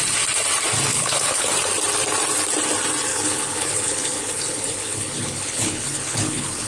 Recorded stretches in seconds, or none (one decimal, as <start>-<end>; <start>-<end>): 0.0-0.9; 1.5-3.1

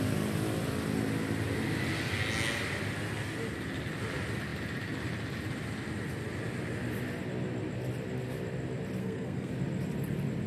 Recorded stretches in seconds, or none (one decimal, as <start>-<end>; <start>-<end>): 0.0-9.0; 9.5-10.5